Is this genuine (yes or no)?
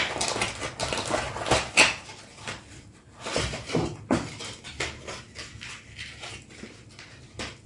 yes